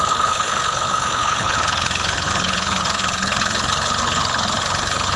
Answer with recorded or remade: remade